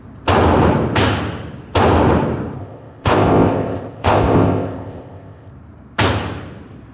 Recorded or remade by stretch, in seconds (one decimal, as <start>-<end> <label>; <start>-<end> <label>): 0.0-2.6 recorded; 2.6-5.5 remade; 5.5-6.9 recorded